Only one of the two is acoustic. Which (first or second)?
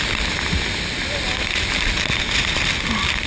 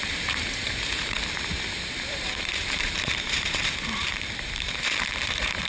first